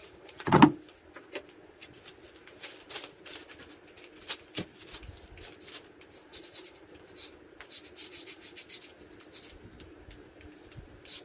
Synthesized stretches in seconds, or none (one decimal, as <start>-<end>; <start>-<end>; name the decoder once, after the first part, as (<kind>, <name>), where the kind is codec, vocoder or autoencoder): 0.0-0.8 (vocoder, Vocos); 6.3-6.9; 8.0-8.6